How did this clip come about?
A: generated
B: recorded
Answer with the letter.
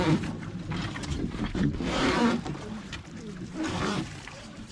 A